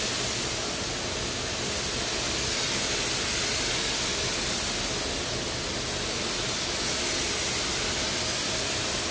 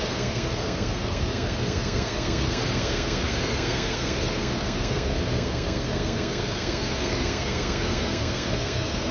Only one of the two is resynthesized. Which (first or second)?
second